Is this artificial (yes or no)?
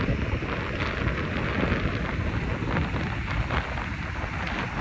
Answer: no